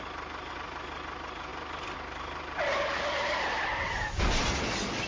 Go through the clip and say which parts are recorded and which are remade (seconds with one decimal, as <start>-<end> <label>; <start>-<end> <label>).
0.0-5.1 recorded